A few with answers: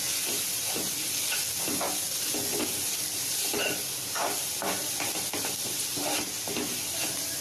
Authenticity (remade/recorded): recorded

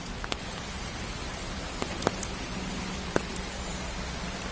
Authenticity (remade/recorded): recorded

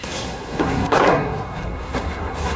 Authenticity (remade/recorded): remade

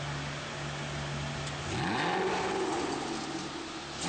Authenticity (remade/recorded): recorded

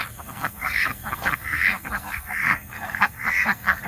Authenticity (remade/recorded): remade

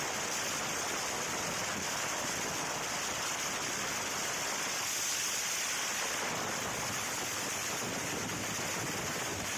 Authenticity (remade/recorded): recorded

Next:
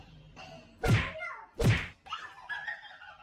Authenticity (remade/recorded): recorded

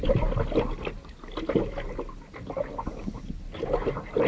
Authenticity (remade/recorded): recorded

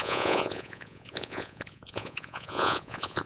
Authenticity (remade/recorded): remade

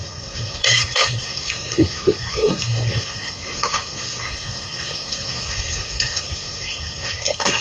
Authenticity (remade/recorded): remade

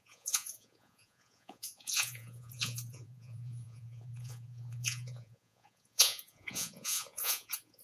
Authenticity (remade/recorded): remade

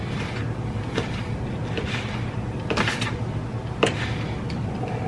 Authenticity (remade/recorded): recorded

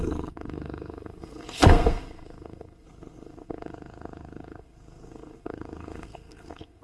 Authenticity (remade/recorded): remade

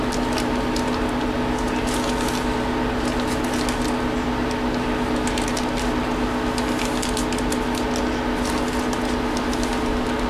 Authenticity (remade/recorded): recorded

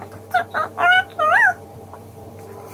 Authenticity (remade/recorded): remade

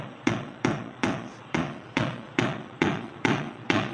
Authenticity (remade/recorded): remade